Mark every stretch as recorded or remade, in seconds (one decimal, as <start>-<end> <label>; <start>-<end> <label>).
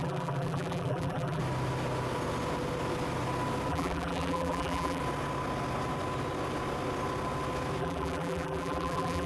0.0-1.4 remade; 1.4-3.7 recorded; 3.7-5.0 remade; 5.0-7.8 recorded; 7.8-9.3 remade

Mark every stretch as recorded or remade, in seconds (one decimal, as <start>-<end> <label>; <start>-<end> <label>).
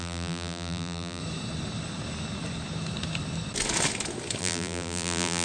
0.0-1.2 remade; 1.2-4.4 recorded; 4.4-5.4 remade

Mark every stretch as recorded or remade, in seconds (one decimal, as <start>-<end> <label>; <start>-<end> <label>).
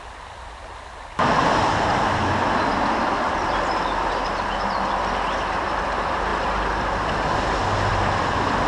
0.0-8.7 recorded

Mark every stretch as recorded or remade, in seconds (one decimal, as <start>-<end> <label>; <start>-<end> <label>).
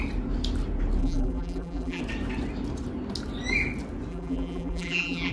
0.0-1.0 recorded; 1.0-2.0 remade; 2.0-4.1 recorded; 4.1-5.3 remade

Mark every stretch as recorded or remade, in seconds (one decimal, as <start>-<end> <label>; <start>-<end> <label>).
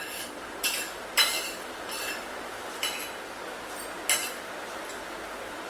0.0-0.4 recorded; 0.4-3.0 remade; 3.0-5.7 recorded